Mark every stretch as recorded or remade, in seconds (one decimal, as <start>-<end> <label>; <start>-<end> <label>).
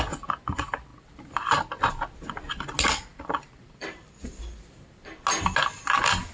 0.0-0.9 recorded; 0.9-1.7 remade; 1.7-3.1 recorded; 3.1-4.9 remade; 4.9-6.3 recorded